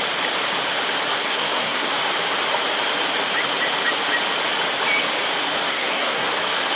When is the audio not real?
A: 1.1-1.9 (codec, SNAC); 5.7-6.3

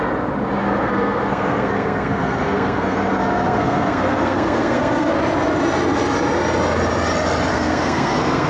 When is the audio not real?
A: 0.6-5.2 (codec, SNAC); 7.5-8.5

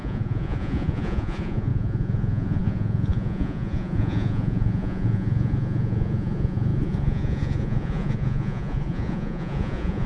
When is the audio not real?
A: 0.0-10.1 (vocoder, Vocos)